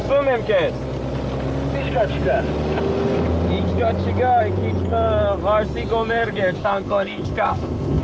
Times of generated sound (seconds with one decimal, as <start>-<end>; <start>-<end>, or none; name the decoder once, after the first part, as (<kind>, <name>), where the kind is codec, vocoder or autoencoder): 6.6-8.0 (codec, ZipCodec)

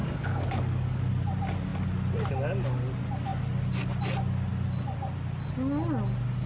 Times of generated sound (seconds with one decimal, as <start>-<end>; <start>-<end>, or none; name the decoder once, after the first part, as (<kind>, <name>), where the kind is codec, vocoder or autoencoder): 0.0-1.1 (codec, DAC)

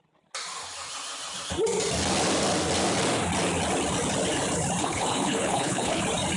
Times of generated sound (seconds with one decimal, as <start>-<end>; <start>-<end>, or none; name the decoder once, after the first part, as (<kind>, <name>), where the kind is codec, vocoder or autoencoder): 4.8-6.0 (codec, HILCodec)

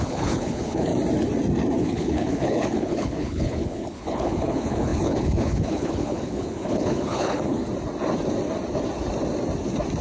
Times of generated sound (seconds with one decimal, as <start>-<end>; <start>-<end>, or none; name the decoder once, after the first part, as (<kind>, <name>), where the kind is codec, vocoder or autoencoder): 0.0-0.9 (codec, HILCodec); 1.8-7.6

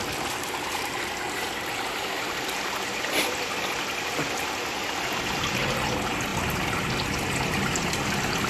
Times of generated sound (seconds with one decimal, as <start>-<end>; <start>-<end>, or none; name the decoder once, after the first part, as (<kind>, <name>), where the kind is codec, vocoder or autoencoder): none

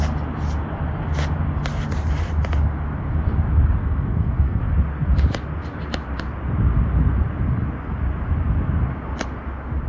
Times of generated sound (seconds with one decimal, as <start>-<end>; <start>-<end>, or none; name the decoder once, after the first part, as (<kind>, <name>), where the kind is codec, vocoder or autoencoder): 3.8-4.6 (codec, SNAC)

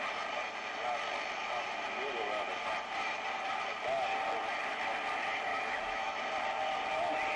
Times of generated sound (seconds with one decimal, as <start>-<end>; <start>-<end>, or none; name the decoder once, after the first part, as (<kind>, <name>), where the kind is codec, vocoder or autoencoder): 5.5-6.2 (autoencoder, DAC-VAE)

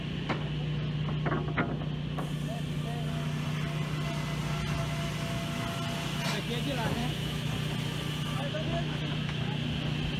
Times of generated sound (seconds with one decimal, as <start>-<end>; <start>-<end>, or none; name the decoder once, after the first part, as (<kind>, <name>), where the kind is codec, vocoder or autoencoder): 7.0-7.5 (autoencoder, DAC-VAE)